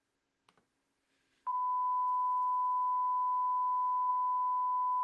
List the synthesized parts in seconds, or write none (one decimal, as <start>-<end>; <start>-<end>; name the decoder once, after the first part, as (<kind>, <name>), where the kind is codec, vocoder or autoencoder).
1.1-4.1 (autoencoder, DAC-VAE)